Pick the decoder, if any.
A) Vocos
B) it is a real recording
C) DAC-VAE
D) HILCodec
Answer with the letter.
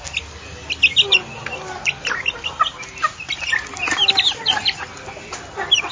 B